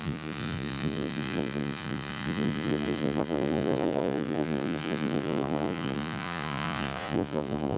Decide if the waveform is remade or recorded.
remade